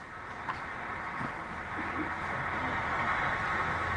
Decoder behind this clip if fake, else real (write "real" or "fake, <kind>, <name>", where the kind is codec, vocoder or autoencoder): real